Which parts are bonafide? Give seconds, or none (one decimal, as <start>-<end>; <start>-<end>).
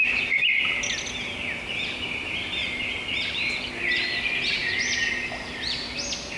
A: 0.7-2.6; 4.3-6.4